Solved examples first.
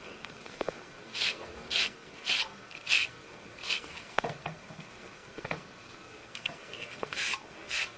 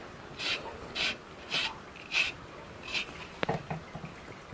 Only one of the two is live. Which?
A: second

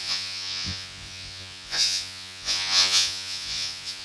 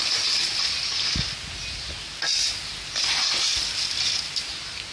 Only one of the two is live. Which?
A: second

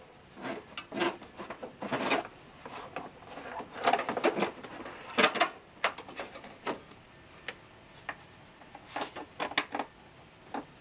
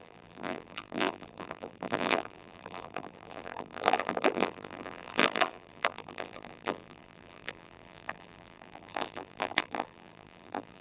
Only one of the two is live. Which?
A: first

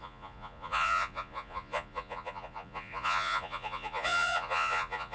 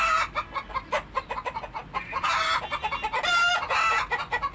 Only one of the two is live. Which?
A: second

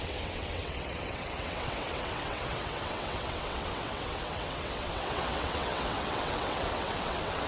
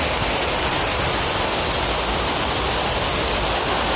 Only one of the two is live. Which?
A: second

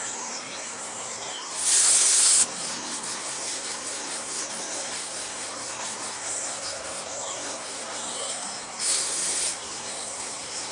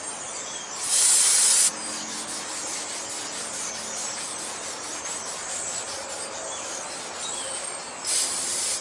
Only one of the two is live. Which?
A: second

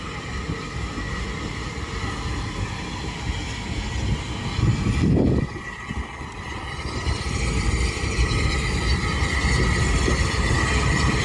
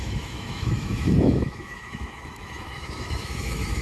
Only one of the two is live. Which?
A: first